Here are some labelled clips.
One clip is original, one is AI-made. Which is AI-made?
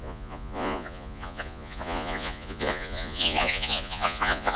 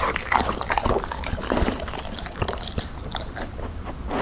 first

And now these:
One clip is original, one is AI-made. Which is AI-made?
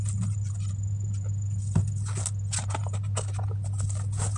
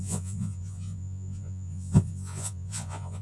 second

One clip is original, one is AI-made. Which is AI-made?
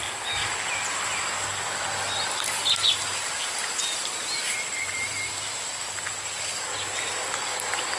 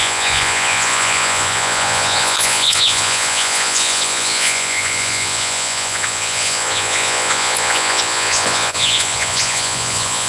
second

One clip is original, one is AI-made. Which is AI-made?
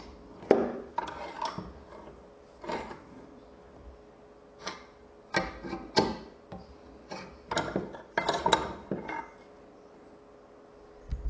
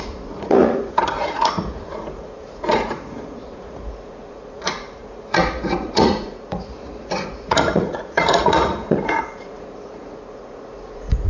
second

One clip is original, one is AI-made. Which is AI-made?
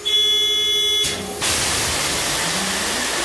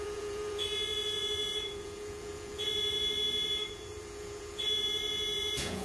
second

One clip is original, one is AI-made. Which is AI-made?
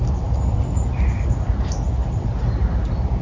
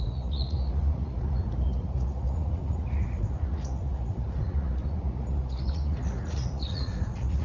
second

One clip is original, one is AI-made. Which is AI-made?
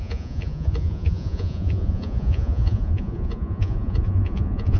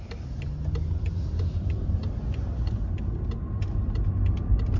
first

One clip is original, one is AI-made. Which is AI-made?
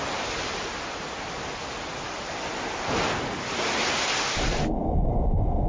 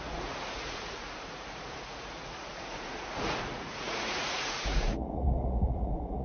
second